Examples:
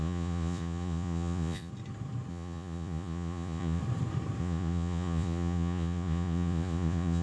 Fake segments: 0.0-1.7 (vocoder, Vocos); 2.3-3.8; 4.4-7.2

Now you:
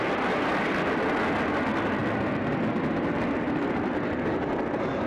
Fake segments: none

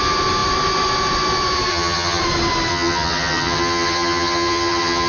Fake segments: 1.7-2.2 (vocoder, HiFi-GAN); 2.7-5.1

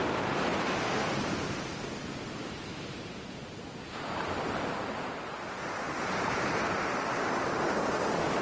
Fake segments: none

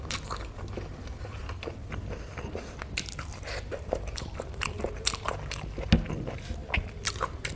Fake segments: none

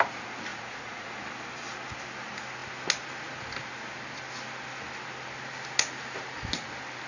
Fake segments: 0.5-1.1 (vocoder, Vocos)